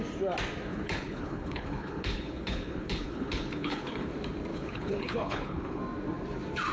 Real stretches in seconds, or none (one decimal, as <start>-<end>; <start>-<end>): 0.0-0.7; 4.1-4.5; 5.8-6.7